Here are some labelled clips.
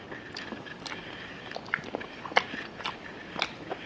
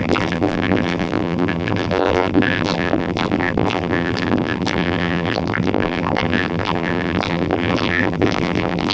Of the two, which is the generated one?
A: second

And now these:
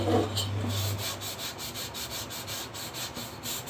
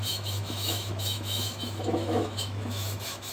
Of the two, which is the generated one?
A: second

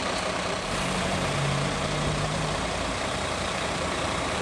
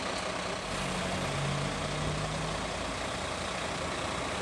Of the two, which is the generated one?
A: first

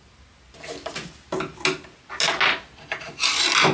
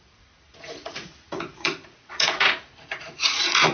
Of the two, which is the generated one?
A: second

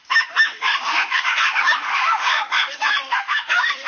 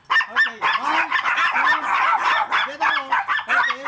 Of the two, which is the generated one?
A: first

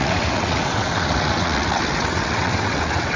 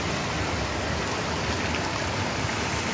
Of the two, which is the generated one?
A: first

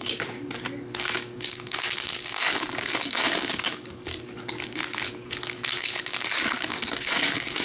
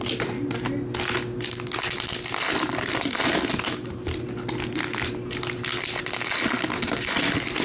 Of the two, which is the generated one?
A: first